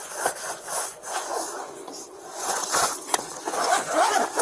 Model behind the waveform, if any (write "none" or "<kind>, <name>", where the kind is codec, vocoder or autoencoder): vocoder, Vocos